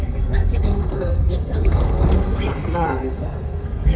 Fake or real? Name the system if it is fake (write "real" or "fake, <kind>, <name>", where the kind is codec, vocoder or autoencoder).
fake, codec, SNAC